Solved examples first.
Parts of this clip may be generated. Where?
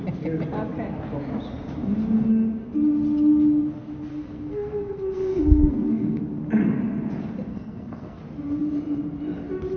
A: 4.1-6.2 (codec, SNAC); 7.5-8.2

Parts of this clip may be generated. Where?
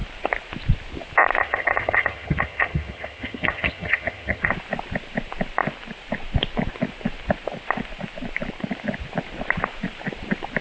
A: 1.4-4.5 (vocoder, HiFi-GAN)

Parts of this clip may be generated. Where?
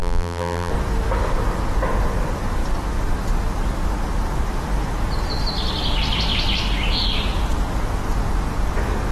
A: 0.0-0.7 (vocoder, BigVGAN v2)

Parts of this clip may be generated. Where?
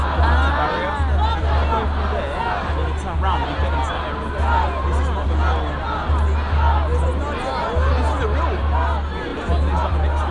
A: none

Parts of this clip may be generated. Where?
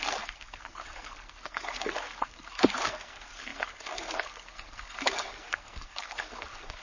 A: 0.0-6.8 (codec, SNAC)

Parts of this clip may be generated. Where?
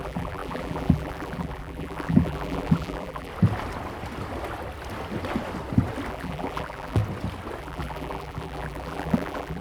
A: 0.0-3.3 (vocoder, BigVGAN v2); 6.1-7.0; 7.6-9.6